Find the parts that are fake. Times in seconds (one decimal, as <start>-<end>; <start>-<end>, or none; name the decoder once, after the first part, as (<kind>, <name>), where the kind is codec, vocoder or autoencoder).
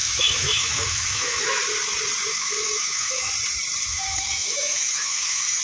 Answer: 0.0-1.6 (autoencoder, DAC-VAE); 2.3-3.3; 3.9-5.6